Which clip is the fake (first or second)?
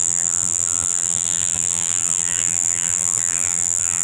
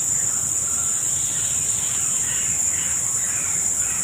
first